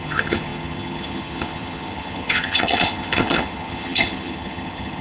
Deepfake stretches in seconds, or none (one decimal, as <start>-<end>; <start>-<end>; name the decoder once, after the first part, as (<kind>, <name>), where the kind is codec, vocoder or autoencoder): 0.0-5.0 (vocoder, HiFi-GAN)